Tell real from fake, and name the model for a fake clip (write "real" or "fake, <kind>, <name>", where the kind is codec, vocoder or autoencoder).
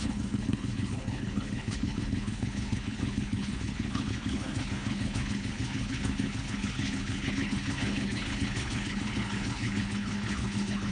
fake, codec, HILCodec